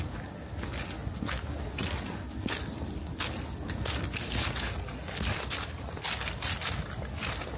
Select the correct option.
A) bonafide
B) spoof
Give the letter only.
A